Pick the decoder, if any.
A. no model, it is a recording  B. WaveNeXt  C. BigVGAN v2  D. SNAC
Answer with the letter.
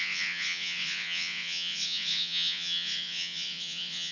B